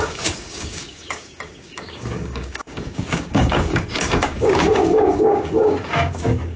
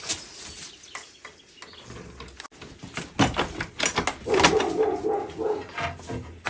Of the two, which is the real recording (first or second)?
second